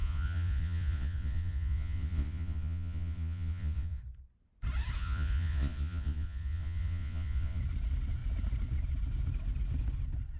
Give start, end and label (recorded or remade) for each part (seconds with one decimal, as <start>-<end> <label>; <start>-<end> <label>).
0.0-4.0 remade; 4.0-5.0 recorded; 5.0-7.6 remade; 7.6-10.4 recorded